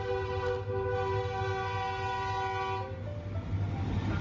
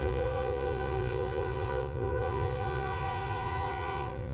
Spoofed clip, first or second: second